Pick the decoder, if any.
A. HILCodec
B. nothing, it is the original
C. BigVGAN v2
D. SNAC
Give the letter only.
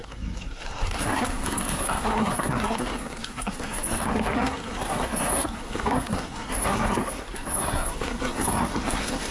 D